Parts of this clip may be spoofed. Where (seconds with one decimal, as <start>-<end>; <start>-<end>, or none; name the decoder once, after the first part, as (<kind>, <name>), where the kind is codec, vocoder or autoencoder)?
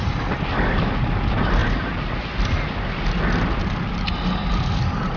none